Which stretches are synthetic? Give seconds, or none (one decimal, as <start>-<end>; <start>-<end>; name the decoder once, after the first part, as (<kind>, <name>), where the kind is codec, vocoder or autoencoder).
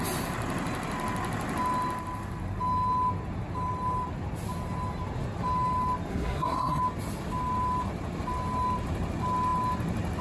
6.1-6.8 (codec, SNAC)